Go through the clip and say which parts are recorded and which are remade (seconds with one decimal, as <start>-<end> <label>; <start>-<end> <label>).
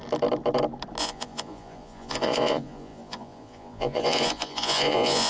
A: 0.0-1.0 recorded; 1.0-5.3 remade